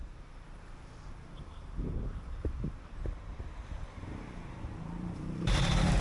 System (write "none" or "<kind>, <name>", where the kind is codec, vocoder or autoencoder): vocoder, BigVGAN v2